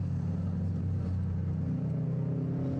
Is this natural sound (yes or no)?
yes